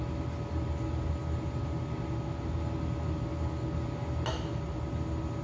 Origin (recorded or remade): recorded